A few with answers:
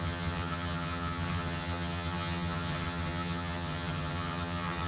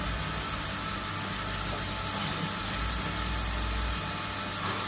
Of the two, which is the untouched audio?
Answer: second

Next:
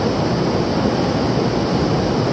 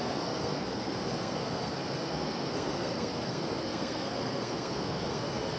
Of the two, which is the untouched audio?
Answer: first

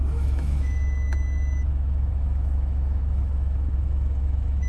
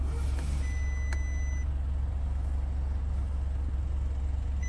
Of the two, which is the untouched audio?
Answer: second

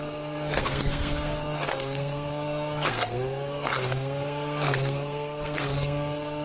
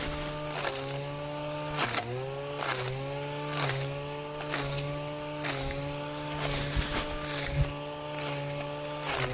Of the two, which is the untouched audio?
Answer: second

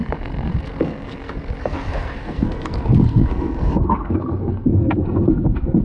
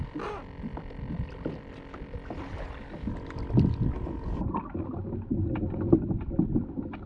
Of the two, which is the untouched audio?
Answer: second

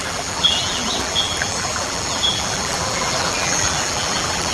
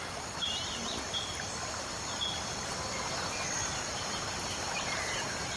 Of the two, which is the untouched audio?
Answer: second